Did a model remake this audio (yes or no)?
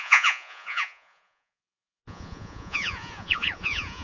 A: yes